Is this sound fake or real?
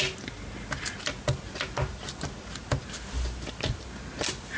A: real